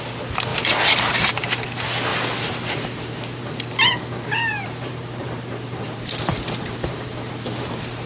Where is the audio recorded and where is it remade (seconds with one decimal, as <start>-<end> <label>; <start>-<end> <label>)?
0.0-0.5 recorded; 0.5-1.3 remade; 1.3-2.1 recorded; 2.1-3.5 remade; 3.5-4.5 recorded; 4.5-7.3 remade; 7.3-8.1 recorded